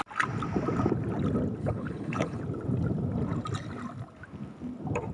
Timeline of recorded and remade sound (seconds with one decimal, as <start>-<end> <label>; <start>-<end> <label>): 0.0-1.6 recorded; 1.6-2.4 remade; 2.4-5.1 recorded